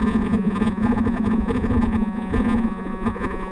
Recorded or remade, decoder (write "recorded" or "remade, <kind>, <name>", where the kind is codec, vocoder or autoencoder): remade, vocoder, Vocos